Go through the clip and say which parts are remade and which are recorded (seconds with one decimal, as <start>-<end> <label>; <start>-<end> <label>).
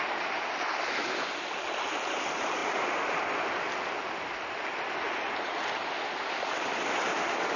0.0-7.6 recorded